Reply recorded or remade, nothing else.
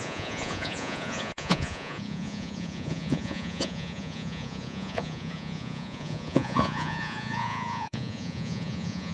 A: remade